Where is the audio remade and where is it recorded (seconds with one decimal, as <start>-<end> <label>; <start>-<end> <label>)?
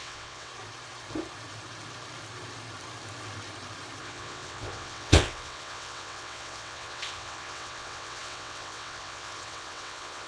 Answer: 0.0-0.5 remade; 0.5-4.0 recorded; 4.0-10.3 remade